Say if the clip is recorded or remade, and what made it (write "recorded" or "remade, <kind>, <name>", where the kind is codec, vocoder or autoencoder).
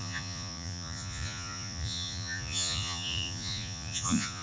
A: remade, vocoder, Vocos